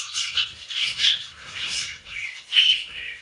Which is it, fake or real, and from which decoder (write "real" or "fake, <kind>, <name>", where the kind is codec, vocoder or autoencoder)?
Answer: fake, codec, SNAC